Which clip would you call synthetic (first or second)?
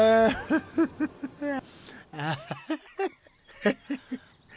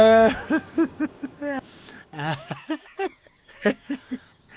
second